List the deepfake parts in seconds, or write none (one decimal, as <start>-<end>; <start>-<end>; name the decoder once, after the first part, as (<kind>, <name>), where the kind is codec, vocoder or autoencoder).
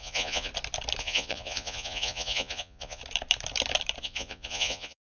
0.0-0.5 (vocoder, Vocos); 1.0-3.0; 4.0-5.0